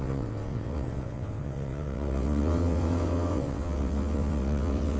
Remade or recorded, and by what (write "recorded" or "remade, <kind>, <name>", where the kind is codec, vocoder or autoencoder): remade, vocoder, WaveNeXt